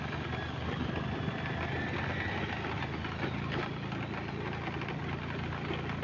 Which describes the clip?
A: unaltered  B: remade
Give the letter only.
A